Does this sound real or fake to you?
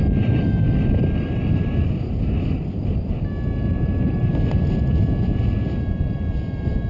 real